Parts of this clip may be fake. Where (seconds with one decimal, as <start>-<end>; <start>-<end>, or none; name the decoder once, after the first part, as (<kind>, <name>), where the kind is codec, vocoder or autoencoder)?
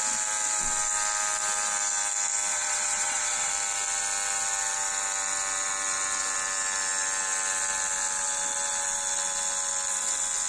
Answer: 2.5-3.5 (vocoder, WaveNeXt)